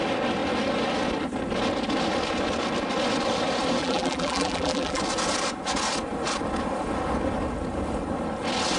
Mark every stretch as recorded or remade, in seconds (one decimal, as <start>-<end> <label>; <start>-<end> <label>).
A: 0.0-3.8 recorded; 3.8-5.0 remade; 5.0-8.8 recorded